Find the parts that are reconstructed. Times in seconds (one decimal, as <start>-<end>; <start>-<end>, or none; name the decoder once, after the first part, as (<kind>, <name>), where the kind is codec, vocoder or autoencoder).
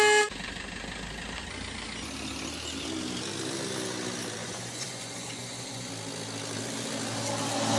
4.4-5.9 (vocoder, Vocos)